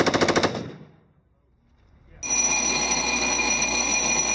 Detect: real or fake real